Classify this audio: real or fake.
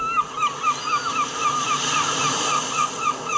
real